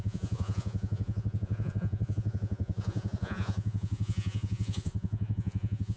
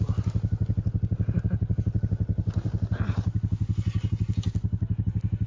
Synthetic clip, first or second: first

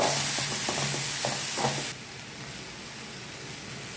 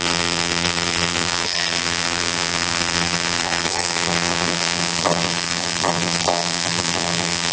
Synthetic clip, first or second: second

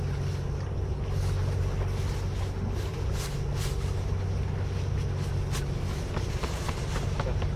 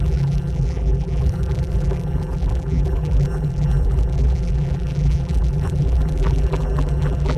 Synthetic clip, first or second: second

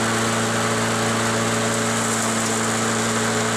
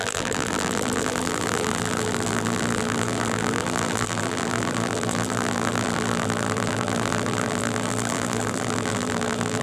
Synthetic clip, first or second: second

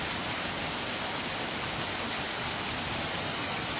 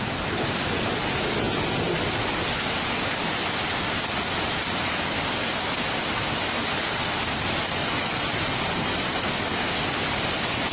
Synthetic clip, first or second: first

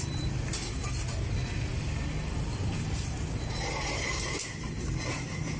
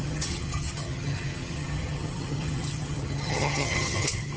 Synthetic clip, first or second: second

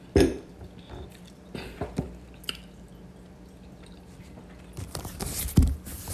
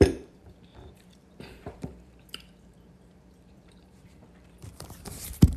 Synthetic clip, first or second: second